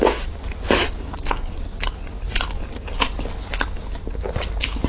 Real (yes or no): yes